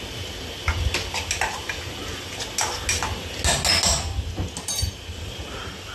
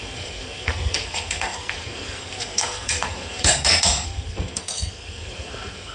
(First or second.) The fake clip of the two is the second